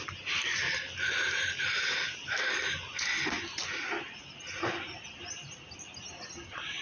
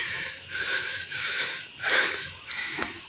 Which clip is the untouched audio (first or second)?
first